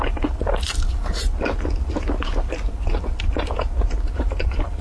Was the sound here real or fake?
real